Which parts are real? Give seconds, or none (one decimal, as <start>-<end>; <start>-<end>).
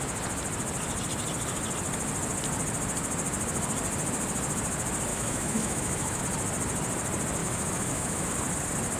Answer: 0.0-5.1; 6.2-7.4; 8.3-9.0